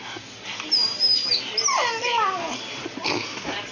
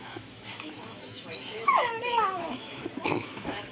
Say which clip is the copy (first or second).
second